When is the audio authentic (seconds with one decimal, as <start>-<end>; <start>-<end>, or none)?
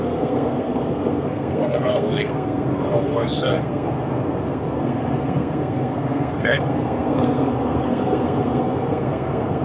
none